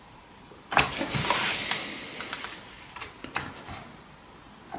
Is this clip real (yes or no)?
yes